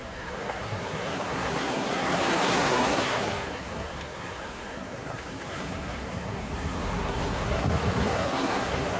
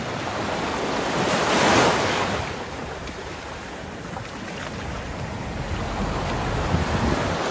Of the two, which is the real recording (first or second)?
second